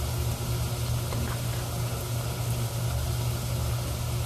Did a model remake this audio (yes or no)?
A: no